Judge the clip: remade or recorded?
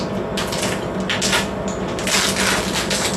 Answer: recorded